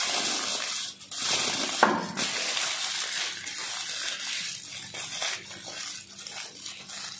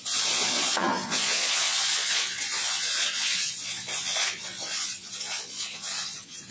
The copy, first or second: second